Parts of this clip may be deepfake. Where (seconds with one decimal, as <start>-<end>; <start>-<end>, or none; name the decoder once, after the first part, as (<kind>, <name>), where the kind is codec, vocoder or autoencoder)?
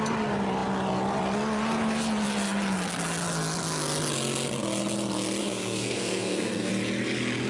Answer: 5.4-6.7 (codec, SNAC)